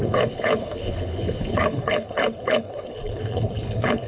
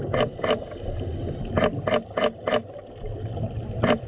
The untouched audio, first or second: second